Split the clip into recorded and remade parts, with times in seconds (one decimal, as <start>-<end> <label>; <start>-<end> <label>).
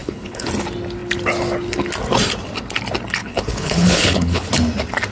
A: 0.0-0.5 remade; 0.5-3.2 recorded; 3.2-4.5 remade; 4.5-5.1 recorded